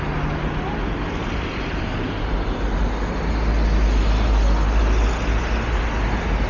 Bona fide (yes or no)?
yes